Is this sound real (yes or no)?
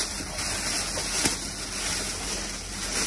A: yes